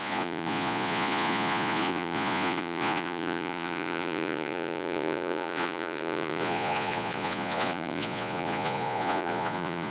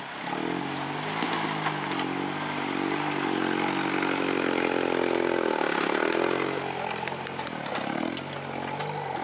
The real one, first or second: second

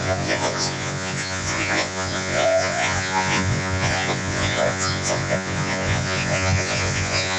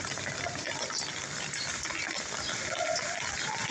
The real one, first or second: second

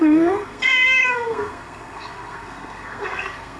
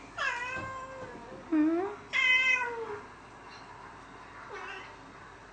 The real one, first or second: second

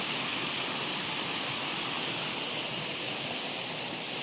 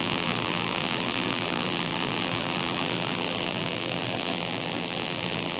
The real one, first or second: first